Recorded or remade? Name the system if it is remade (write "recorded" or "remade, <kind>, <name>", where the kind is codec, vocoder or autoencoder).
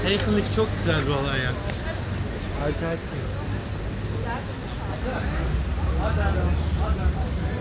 recorded